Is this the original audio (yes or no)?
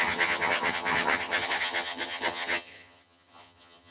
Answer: no